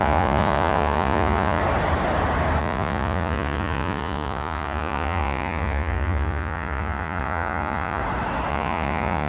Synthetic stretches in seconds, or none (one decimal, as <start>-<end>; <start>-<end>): 0.0-1.6; 2.6-8.0; 8.5-9.3